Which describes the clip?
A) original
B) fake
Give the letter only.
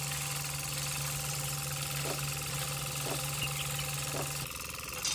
A